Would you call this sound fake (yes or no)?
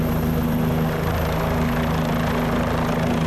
no